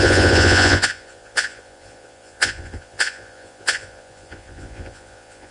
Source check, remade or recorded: remade